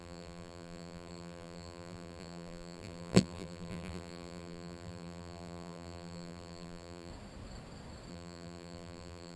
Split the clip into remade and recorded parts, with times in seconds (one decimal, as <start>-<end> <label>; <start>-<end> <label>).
0.0-7.1 remade; 7.1-8.1 recorded; 8.1-9.4 remade